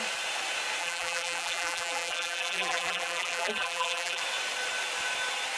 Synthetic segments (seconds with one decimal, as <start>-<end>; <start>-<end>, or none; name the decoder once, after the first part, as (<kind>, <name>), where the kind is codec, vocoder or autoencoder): 0.8-4.2 (vocoder, BigVGAN v2)